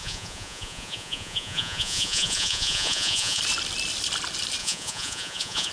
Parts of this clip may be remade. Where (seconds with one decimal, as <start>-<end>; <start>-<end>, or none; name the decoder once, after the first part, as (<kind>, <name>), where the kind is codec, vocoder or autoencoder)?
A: 0.0-3.4 (vocoder, Vocos); 4.6-5.7

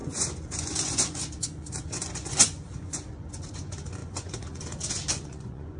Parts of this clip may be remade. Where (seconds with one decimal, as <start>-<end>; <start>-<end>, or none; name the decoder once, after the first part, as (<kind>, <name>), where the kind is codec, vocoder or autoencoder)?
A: 0.0-5.8 (vocoder, Vocos)

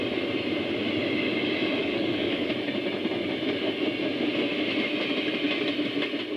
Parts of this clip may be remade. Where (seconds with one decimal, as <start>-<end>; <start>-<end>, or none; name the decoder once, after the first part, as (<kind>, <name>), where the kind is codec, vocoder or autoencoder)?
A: 1.8-2.5 (codec, DAC)

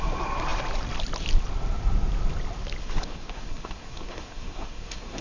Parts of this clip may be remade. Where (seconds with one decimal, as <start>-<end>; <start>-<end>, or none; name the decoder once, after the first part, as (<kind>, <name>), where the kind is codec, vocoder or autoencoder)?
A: 2.8-5.2 (codec, SNAC)

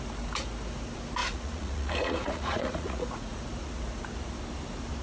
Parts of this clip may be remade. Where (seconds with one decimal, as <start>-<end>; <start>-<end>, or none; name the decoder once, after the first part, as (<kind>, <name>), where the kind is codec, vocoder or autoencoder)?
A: 1.2-3.4 (vocoder, Vocos)